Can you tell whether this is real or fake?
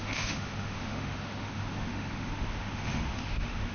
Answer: fake